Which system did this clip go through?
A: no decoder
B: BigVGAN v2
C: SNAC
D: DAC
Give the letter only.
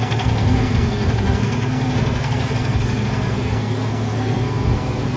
C